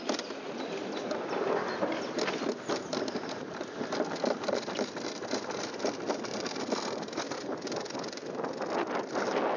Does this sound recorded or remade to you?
remade